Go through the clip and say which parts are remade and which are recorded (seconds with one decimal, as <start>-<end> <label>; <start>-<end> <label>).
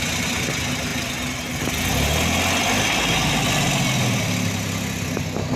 0.0-5.6 recorded